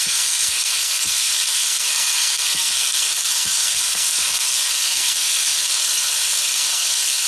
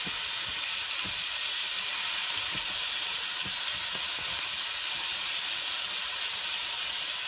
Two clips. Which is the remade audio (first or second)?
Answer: first